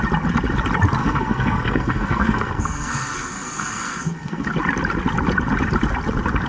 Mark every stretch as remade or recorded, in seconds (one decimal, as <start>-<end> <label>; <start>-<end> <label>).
0.0-1.0 recorded; 1.0-4.5 remade; 4.5-6.5 recorded